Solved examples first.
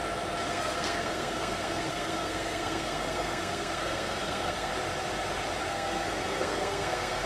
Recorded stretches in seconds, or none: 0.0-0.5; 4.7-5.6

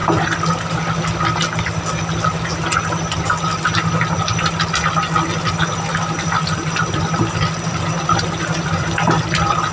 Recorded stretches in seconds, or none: 0.0-5.7

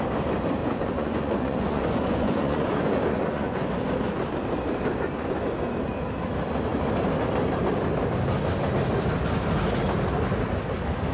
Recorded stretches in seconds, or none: 0.0-0.6; 3.7-11.1

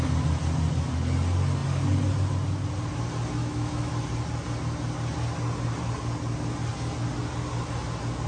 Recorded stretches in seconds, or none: 0.0-3.4; 3.9-8.3

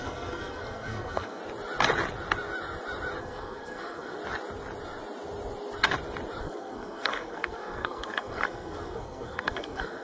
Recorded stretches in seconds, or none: 1.4-3.2; 4.2-6.4

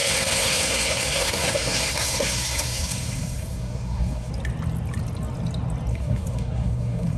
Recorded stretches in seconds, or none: 4.3-5.9

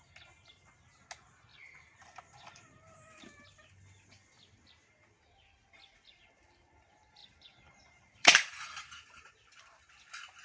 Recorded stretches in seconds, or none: 0.0-1.5; 3.2-7.2; 9.3-10.4